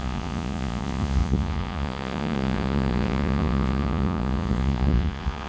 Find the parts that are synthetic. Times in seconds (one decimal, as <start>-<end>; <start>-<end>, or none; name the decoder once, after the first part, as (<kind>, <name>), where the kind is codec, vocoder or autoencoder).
0.0-5.5 (vocoder, Vocos)